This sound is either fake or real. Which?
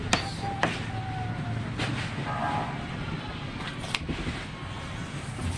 real